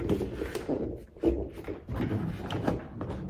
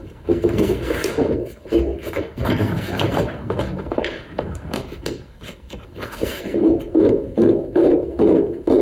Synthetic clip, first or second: second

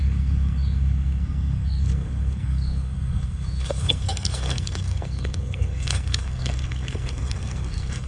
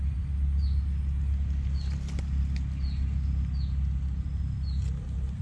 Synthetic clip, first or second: first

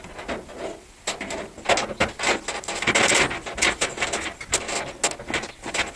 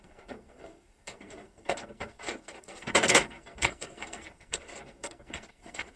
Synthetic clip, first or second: second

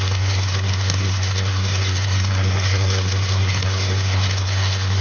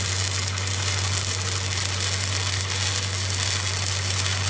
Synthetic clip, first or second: first